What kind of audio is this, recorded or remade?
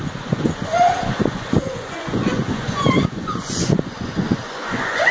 remade